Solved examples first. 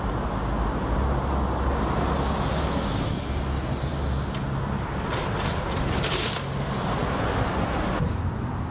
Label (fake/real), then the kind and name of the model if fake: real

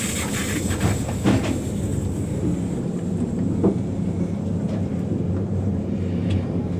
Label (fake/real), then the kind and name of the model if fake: real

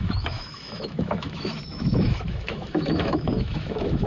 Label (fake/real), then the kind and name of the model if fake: fake, autoencoder, DAC-VAE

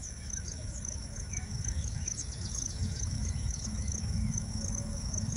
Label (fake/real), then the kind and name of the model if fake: fake, autoencoder, DAC-VAE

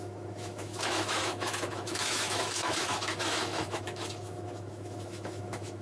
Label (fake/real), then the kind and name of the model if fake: fake, autoencoder, DAC-VAE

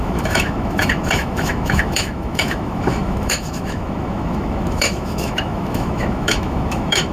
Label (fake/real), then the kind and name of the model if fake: fake, autoencoder, DAC-VAE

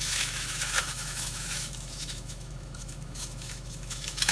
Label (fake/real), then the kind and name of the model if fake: fake, autoencoder, DAC-VAE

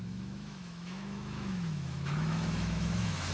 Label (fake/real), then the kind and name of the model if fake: fake, autoencoder, DAC-VAE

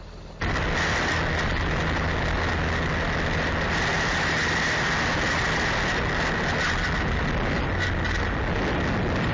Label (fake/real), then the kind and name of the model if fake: real